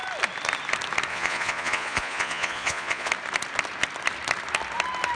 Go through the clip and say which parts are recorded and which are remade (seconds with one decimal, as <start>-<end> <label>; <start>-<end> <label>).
0.0-1.1 recorded; 1.1-3.1 remade; 3.1-5.2 recorded